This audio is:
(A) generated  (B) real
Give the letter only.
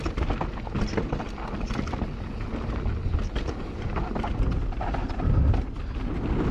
B